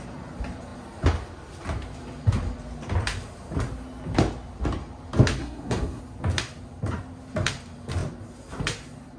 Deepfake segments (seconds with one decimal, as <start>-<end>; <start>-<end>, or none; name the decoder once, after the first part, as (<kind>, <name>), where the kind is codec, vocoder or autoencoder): 5.4-6.0 (codec, SNAC)